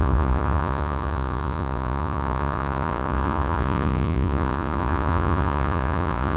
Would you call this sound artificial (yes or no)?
yes